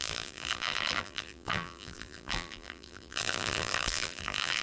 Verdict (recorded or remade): remade